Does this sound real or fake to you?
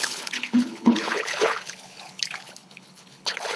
fake